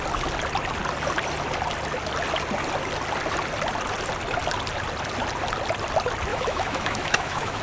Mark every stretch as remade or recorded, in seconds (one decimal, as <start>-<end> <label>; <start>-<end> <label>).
0.0-6.3 recorded; 6.3-7.6 remade